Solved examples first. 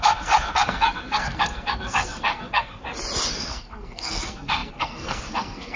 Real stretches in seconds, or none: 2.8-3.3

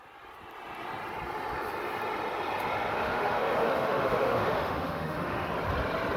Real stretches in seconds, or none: 0.0-2.9; 5.5-6.2

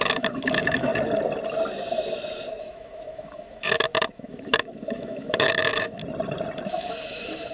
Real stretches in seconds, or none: 0.9-2.6; 6.0-6.7

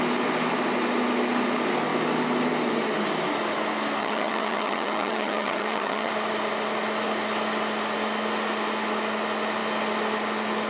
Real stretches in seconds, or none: 0.0-4.0; 6.1-10.7

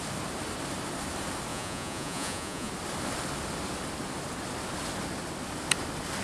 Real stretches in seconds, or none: 0.0-1.5; 2.7-6.2

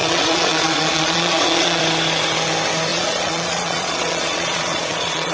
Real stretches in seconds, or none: 1.8-2.9

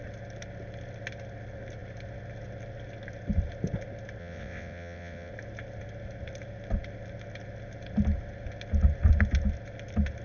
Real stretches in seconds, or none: 0.0-4.2; 5.3-10.2